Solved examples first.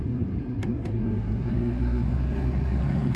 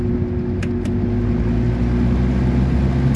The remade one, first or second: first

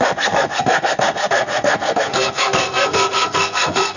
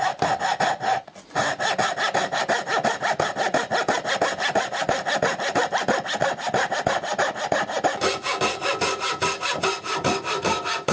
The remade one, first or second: first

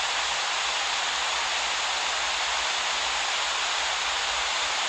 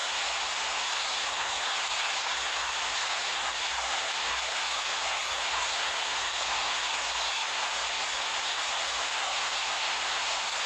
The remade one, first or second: second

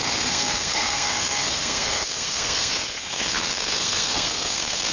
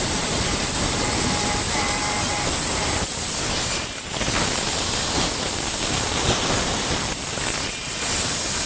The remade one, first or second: first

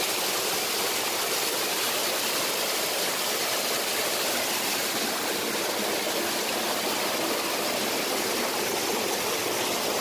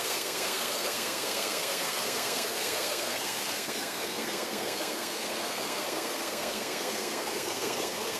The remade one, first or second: second